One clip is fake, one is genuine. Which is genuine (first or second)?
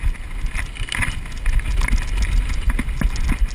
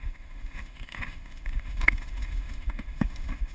first